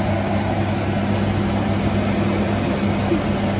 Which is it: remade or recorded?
recorded